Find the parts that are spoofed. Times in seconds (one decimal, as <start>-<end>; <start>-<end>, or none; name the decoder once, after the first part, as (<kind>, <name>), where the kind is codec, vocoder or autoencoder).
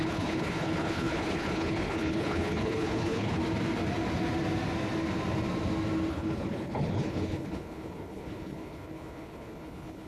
0.0-3.4 (codec, HILCodec); 6.1-10.1